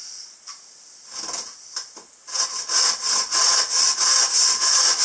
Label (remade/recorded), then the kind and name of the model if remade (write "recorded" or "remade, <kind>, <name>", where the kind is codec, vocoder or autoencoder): recorded